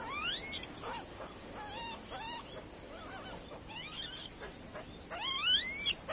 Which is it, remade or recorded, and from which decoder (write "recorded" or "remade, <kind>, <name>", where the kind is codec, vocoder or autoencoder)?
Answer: recorded